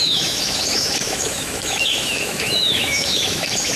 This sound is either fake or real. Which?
fake